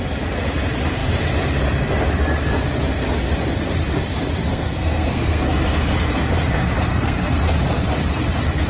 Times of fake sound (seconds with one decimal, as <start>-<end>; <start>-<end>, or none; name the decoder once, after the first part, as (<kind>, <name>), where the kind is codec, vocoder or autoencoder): 4.4-5.4 (codec, SNAC); 6.9-7.4